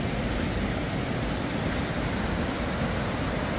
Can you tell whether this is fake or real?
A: real